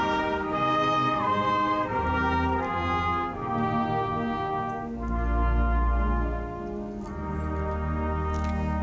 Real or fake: real